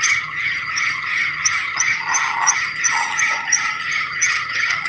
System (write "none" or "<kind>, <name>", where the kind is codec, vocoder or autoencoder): vocoder, HiFi-GAN